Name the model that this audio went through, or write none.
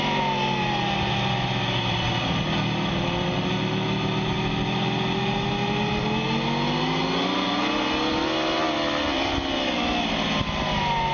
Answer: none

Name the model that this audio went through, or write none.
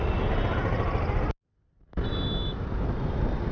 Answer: none